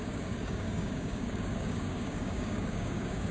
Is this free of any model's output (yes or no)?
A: no